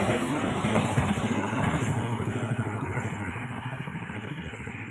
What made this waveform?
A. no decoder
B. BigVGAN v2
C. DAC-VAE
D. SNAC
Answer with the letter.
D